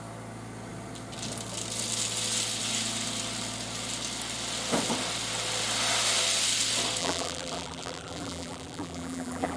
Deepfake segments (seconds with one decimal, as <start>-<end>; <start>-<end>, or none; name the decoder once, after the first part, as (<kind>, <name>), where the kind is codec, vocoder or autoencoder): 7.0-9.6 (vocoder, BigVGAN v2)